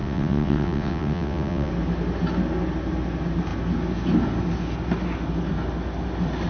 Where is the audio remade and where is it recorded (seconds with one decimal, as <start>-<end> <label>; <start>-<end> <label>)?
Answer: 0.0-1.7 remade; 1.7-6.5 recorded